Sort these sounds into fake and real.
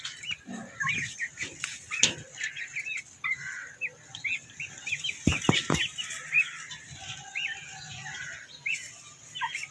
real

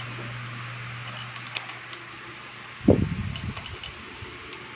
real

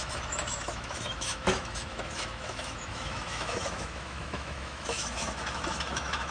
fake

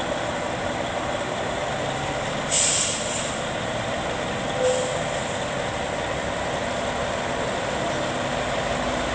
real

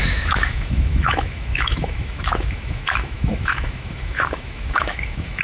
fake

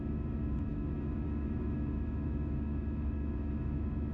fake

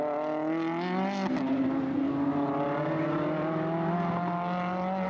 real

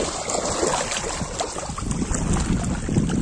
real